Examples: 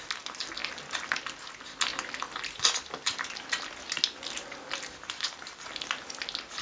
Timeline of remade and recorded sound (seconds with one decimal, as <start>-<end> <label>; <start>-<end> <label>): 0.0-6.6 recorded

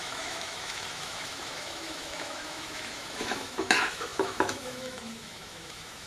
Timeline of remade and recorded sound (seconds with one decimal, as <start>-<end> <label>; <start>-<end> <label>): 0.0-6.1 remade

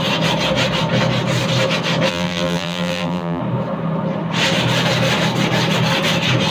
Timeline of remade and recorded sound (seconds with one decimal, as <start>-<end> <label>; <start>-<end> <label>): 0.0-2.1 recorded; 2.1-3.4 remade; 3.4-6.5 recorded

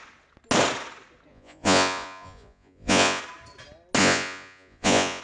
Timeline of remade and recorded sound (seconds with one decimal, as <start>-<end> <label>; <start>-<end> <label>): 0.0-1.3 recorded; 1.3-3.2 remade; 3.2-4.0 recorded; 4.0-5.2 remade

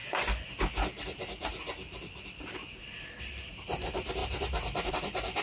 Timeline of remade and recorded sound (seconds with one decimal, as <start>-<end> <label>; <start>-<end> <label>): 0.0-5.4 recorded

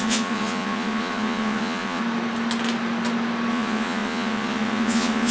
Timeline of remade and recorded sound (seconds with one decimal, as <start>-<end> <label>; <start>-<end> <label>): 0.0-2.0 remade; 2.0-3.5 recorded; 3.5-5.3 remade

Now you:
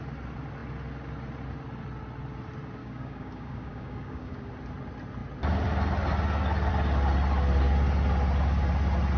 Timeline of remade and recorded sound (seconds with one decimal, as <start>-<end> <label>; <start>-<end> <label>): 0.0-2.8 recorded; 2.8-4.5 remade; 4.5-9.2 recorded